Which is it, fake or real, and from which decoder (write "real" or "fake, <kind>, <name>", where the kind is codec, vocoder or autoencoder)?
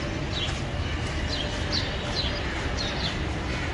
real